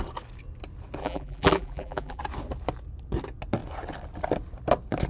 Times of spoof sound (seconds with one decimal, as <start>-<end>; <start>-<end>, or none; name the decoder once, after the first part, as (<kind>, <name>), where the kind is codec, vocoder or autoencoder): 1.0-2.2 (vocoder, BigVGAN v2)